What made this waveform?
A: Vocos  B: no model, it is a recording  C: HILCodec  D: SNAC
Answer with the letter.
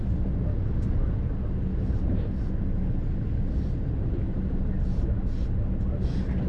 B